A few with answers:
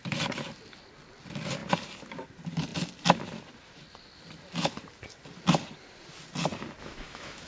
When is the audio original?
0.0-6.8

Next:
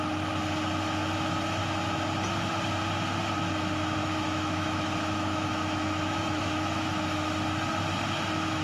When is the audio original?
0.0-4.0; 6.9-8.6